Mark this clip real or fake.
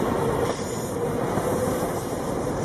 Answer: fake